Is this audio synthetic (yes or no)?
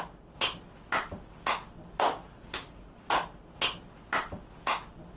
no